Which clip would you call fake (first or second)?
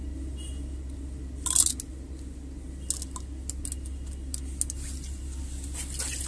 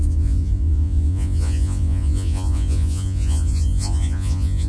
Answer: second